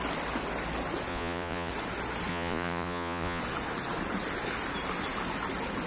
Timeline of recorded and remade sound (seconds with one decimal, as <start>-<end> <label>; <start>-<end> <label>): 0.0-1.1 recorded; 1.1-1.7 remade; 1.7-2.3 recorded; 2.3-3.4 remade; 3.4-5.9 recorded